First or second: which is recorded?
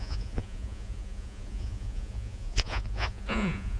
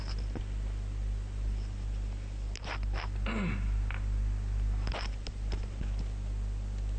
second